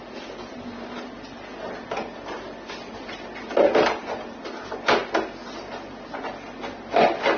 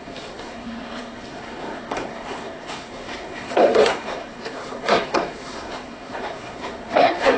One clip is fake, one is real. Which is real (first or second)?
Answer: first